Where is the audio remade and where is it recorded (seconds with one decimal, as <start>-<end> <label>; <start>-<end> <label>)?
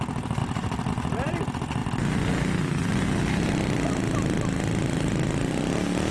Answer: 0.0-0.4 recorded; 0.4-0.9 remade; 0.9-6.1 recorded